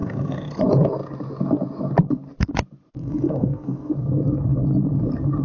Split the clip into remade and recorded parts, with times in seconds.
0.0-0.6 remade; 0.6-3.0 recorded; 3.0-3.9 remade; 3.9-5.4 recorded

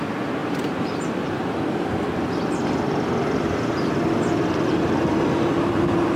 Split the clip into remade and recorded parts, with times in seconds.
0.0-0.4 recorded; 0.4-1.5 remade; 1.5-6.2 recorded

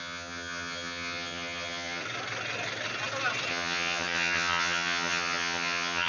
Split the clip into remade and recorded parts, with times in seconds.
0.0-2.0 remade; 2.0-3.5 recorded; 3.5-6.1 remade

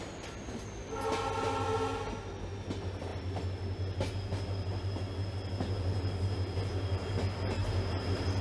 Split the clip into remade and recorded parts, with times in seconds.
0.0-8.4 recorded

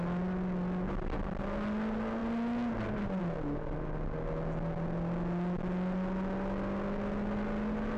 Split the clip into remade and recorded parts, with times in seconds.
0.0-8.0 recorded

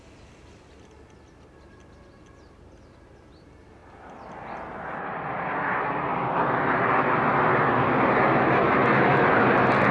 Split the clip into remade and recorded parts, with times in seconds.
0.0-9.9 recorded

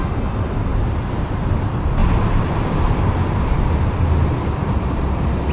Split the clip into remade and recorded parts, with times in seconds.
0.0-2.0 remade; 2.0-3.4 recorded; 3.4-5.5 remade

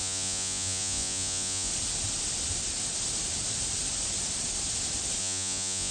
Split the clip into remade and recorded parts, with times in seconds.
0.0-1.7 remade; 1.7-5.2 recorded; 5.2-5.9 remade